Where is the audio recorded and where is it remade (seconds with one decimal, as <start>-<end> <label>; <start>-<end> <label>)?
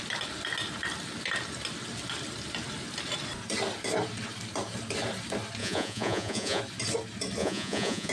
0.0-5.6 recorded; 5.6-6.6 remade; 6.6-7.4 recorded; 7.4-8.1 remade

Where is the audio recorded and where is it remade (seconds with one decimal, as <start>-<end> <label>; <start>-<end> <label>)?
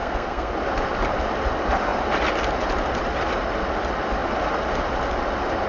0.0-0.5 remade; 0.5-5.7 recorded